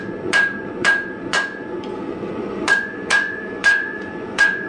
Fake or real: fake